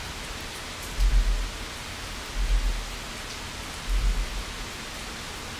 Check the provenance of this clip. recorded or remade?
recorded